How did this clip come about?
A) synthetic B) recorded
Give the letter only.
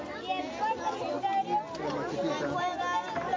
B